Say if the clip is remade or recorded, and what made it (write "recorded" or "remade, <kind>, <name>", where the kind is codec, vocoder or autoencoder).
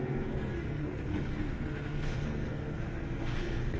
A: remade, codec, SNAC